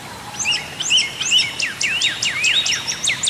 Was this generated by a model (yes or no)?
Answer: no